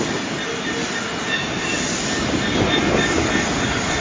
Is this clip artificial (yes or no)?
no